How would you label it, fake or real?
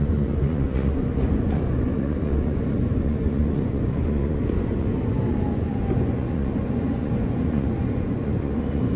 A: fake